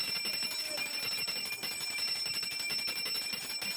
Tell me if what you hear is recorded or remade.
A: recorded